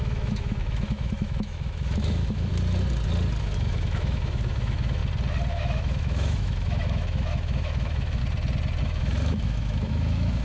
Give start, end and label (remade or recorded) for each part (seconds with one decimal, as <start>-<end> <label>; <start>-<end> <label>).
0.0-2.5 remade; 2.5-3.4 recorded; 3.4-5.0 remade; 5.0-5.5 recorded; 5.5-8.2 remade; 8.2-8.8 recorded; 8.8-10.4 remade